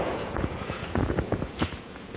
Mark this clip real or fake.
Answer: fake